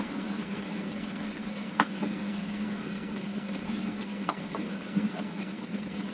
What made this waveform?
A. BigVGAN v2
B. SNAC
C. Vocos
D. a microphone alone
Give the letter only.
B